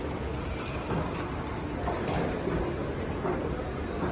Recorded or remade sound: recorded